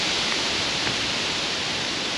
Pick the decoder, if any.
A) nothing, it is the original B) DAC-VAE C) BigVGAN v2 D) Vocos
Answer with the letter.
C